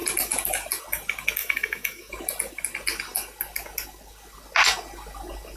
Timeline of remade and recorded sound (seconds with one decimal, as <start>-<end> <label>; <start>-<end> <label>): 0.0-1.4 recorded; 1.4-2.1 remade; 2.1-5.6 recorded